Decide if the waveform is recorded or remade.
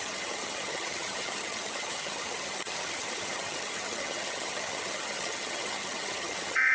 remade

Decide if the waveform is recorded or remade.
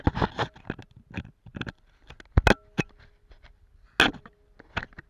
recorded